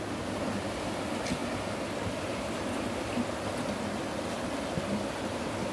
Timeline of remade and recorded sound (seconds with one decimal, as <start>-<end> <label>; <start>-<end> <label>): 0.0-5.7 recorded